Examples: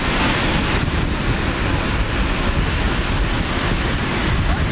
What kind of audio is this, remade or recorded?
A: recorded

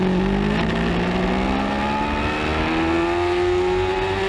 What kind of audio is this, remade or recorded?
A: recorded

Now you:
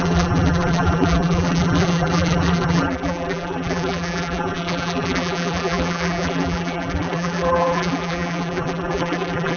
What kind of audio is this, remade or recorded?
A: remade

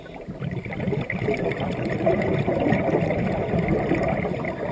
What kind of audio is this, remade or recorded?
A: remade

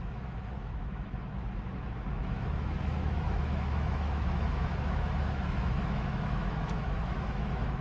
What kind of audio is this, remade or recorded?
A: remade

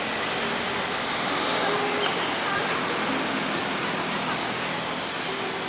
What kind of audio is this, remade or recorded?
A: recorded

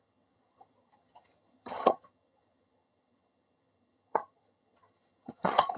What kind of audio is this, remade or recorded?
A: remade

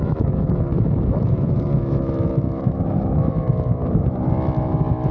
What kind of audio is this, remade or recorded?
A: remade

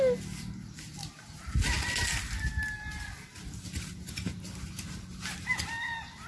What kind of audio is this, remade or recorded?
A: recorded